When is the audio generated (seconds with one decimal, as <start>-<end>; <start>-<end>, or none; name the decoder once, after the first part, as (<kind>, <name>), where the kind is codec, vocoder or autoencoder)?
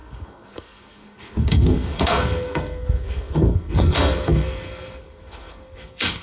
0.0-6.2 (codec, SNAC)